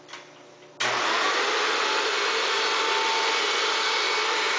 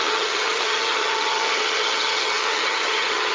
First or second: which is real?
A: first